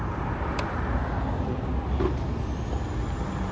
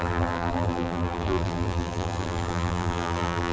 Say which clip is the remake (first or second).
second